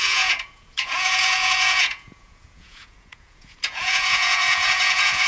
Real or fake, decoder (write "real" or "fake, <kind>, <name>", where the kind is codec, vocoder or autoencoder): fake, vocoder, Vocos